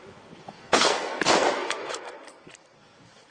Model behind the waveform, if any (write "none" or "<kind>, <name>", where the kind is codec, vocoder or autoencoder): codec, SNAC